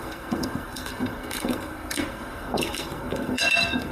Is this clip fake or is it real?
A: fake